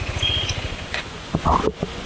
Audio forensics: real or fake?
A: fake